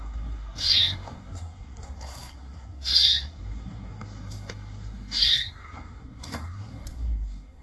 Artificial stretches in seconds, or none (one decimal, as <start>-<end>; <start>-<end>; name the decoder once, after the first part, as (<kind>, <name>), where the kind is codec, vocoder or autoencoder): 0.0-7.6 (codec, SNAC)